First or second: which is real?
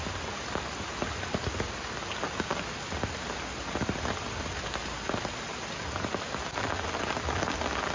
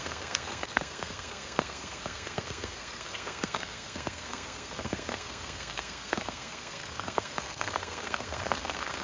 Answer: first